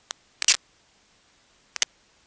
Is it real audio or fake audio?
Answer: real